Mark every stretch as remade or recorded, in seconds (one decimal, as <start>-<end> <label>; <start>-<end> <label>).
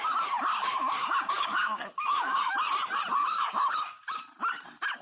0.0-0.5 recorded; 0.5-2.5 remade; 2.5-3.2 recorded; 3.2-4.2 remade; 4.2-5.0 recorded